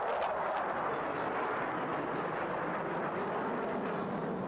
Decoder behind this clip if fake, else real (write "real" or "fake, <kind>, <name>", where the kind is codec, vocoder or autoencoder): real